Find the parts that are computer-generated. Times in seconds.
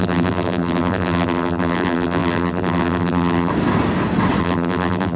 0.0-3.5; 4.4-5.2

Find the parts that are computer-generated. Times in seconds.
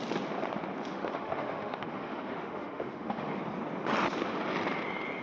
0.9-3.4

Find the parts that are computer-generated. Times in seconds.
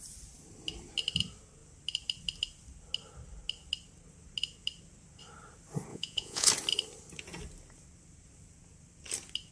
5.9-6.5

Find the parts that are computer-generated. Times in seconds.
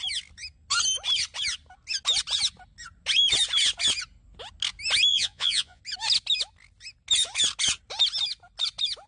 5.1-5.8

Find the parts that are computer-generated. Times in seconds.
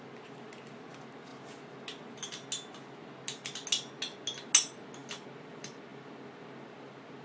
none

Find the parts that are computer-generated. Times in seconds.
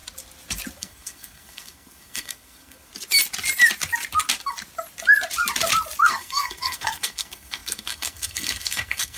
0.8-2.9; 6.0-9.2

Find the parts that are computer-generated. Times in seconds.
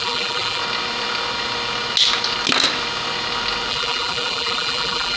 0.0-0.6; 3.7-5.2